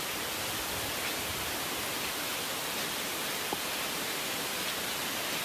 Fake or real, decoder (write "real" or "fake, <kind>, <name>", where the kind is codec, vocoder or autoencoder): real